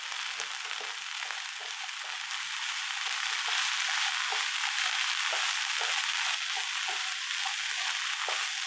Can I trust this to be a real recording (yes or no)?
yes